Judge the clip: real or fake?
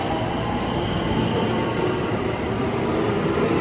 real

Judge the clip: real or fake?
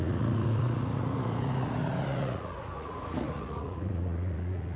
fake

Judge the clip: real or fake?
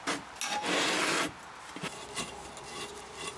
real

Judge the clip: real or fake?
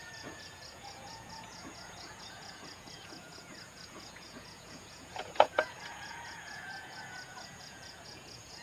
fake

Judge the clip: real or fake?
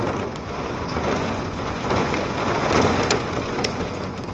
fake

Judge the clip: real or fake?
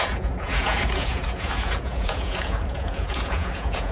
fake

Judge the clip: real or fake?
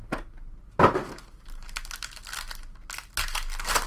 real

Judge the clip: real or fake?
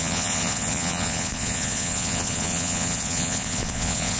fake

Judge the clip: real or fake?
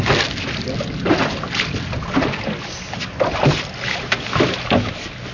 real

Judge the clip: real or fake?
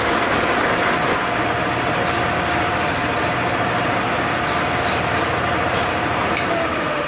real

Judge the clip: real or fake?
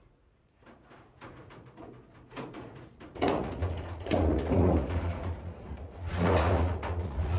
fake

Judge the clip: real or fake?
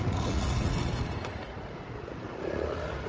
fake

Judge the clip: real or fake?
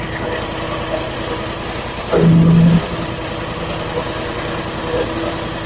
real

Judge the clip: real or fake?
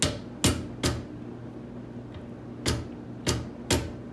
real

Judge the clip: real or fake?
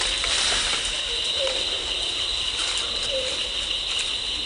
real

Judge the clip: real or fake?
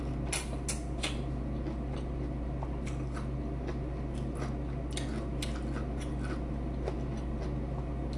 real